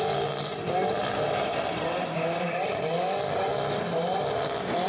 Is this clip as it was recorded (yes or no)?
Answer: yes